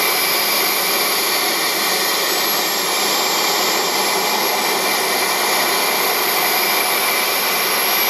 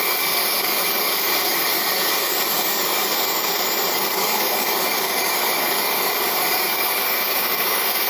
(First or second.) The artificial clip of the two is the second